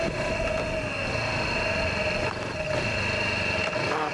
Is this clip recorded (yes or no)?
yes